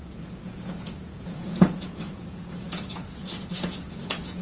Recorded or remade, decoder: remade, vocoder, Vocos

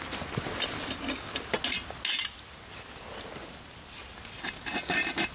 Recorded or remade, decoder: recorded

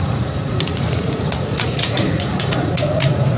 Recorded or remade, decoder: remade, vocoder, Vocos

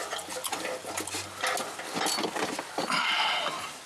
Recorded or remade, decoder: recorded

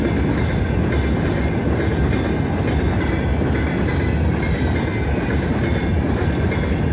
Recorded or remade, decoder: recorded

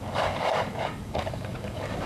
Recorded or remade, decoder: remade, codec, DAC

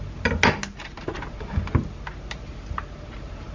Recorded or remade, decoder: recorded